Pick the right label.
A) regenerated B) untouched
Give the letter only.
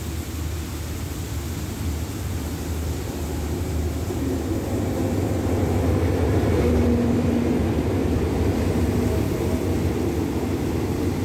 B